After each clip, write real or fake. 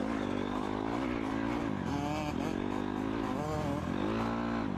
real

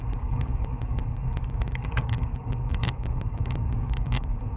fake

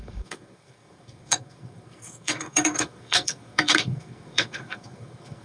fake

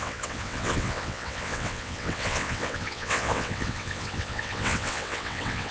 fake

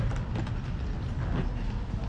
real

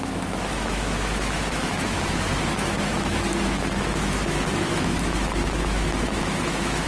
fake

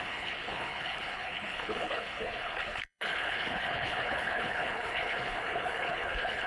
fake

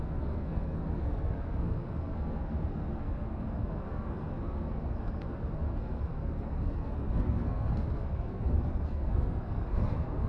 fake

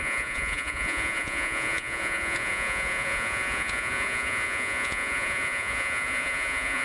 fake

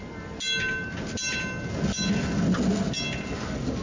real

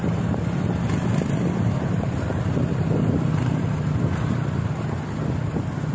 real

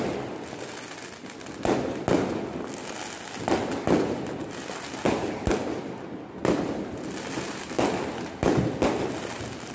real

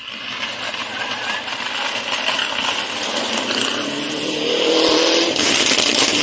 real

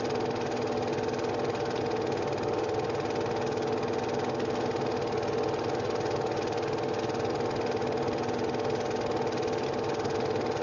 real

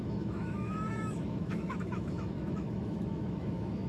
fake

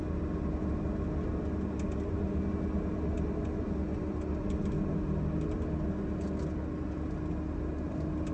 real